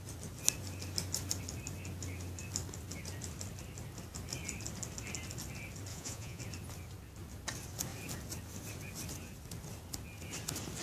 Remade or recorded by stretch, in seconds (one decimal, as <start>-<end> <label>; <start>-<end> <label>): 0.0-5.9 recorded; 5.9-6.4 remade; 6.4-10.8 recorded

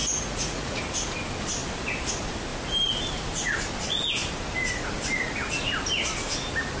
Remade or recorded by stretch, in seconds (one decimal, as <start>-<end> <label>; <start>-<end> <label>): 0.0-0.8 remade; 0.8-6.8 recorded